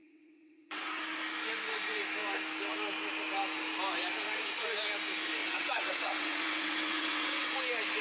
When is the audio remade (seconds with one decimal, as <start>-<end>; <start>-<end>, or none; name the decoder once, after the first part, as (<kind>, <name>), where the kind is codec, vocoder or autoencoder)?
0.0-1.0 (vocoder, WaveNeXt); 5.4-7.5